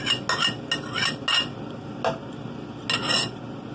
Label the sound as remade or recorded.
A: recorded